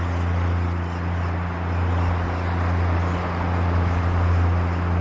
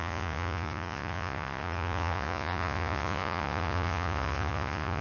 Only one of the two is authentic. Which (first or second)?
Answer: first